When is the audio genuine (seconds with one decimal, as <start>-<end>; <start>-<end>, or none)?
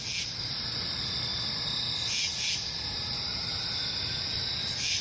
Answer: 0.0-5.0